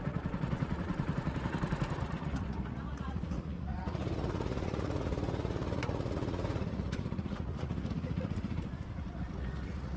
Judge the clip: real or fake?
fake